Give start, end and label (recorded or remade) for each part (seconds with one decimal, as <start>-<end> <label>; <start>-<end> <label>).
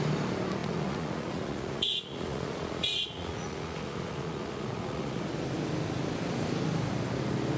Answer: 0.0-0.6 recorded; 0.6-5.2 remade; 5.2-7.6 recorded